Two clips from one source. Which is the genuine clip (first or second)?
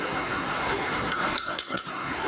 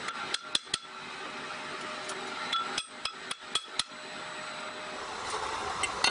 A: second